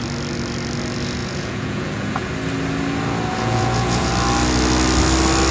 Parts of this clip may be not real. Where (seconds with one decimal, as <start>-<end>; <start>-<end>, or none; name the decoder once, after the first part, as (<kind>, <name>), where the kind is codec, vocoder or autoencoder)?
1.2-2.3 (vocoder, Vocos); 3.3-4.1